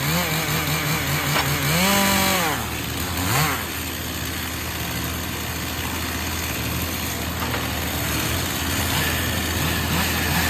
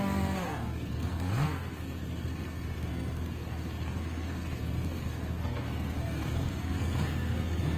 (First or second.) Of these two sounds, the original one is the first